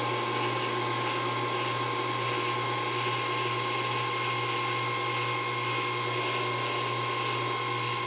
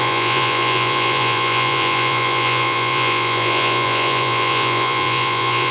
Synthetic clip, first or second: second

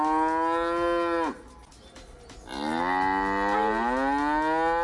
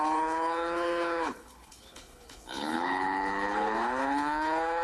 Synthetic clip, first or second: second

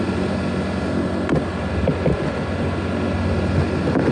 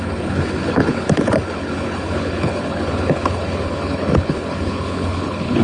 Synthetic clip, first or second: second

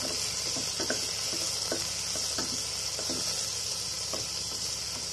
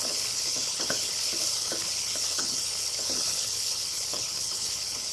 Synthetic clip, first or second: second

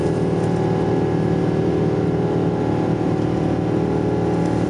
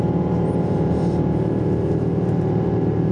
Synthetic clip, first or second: second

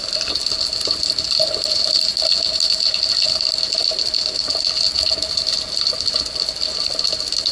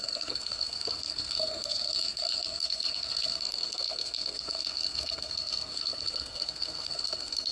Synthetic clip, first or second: second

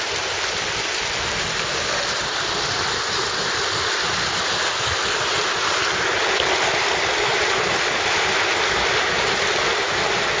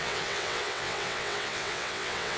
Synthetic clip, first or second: second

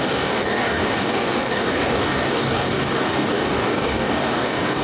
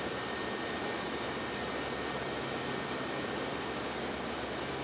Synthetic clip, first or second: first